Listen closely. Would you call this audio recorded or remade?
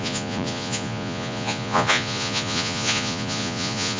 remade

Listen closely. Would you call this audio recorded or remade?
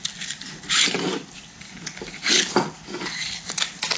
recorded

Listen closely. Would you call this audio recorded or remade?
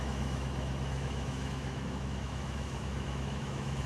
remade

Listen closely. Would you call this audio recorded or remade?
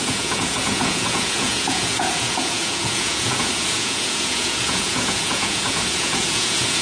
remade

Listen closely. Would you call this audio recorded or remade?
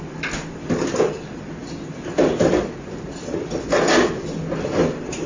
recorded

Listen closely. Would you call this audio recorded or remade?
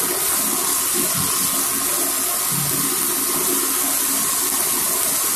recorded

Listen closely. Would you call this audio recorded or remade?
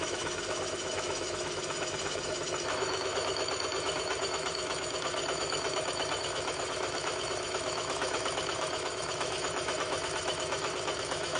remade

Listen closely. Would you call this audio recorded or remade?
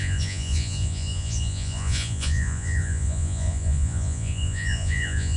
remade